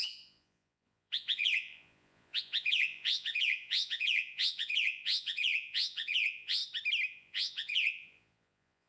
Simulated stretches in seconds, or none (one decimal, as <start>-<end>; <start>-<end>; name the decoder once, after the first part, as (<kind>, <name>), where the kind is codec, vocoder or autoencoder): 0.0-6.6 (vocoder, Vocos); 7.1-8.9